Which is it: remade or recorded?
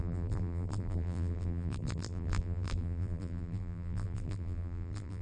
remade